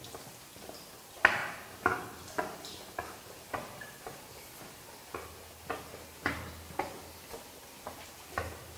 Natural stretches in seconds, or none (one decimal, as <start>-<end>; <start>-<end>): 0.0-1.4; 6.5-8.8